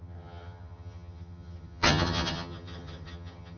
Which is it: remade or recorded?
remade